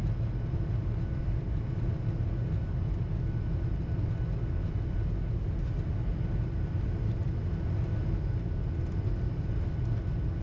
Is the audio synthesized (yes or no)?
no